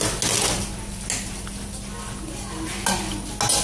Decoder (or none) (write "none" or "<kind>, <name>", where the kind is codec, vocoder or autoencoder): none